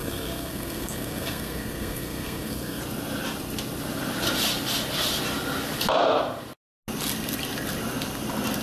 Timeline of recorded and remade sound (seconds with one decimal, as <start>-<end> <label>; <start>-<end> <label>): 0.0-2.8 remade; 2.8-8.6 recorded